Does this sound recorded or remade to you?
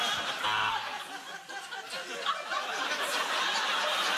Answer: recorded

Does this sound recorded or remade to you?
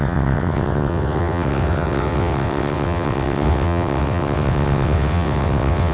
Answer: remade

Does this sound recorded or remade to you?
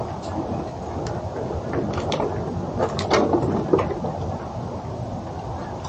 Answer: recorded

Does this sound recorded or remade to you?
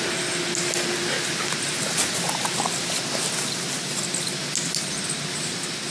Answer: recorded